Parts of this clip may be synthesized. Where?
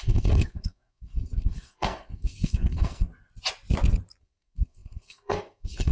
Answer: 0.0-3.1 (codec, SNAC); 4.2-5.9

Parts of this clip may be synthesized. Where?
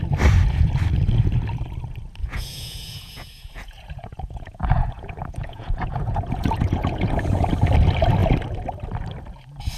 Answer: 2.2-7.5 (vocoder, Vocos)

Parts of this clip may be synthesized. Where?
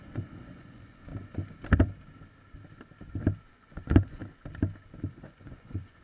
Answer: 0.0-1.1 (vocoder, Vocos); 3.5-4.2; 5.1-6.0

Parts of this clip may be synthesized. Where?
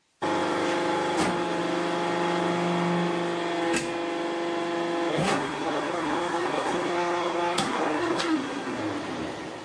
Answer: 5.1-8.8 (codec, SNAC)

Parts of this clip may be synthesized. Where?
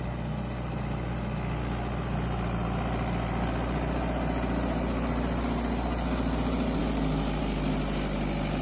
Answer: none